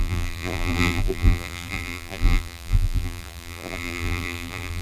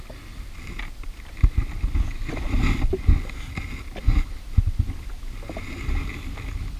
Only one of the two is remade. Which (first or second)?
first